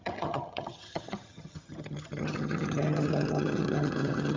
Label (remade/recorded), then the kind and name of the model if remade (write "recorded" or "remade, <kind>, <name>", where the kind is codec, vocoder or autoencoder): remade, vocoder, HiFi-GAN